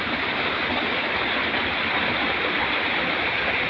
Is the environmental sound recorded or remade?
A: recorded